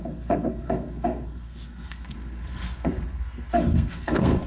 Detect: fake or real fake